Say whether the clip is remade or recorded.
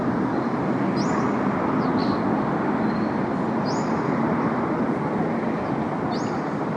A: recorded